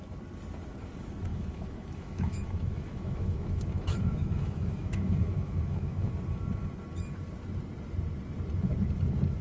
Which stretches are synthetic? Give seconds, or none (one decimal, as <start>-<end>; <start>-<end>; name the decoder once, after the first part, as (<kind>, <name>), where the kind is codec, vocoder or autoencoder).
1.3-6.1 (autoencoder, DAC-VAE)